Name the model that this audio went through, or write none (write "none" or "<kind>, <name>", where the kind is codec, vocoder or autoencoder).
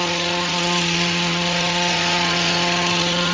vocoder, Vocos